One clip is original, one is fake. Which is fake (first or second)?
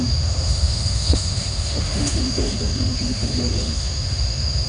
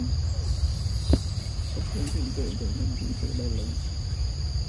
first